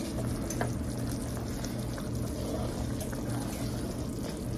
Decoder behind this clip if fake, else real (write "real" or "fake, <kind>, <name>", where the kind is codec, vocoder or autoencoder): real